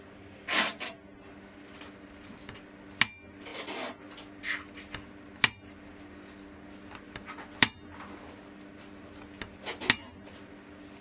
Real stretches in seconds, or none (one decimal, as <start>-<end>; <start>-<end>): 0.0-11.0